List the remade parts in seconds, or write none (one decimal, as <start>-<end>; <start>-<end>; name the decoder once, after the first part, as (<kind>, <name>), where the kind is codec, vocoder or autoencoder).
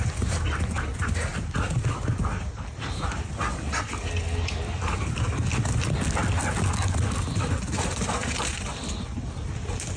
none